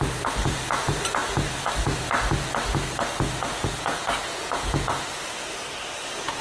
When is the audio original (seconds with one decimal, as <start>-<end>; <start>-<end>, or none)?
0.0-3.5; 4.9-6.4